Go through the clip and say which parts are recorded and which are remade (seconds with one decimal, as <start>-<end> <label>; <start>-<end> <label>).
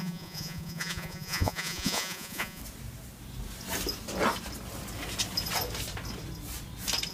0.0-2.6 remade; 2.6-7.1 recorded